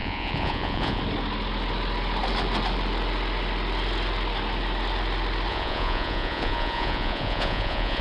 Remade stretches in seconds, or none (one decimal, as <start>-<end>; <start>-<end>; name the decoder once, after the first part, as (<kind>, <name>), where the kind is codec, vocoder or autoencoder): 0.0-1.0 (vocoder, Vocos); 5.5-8.0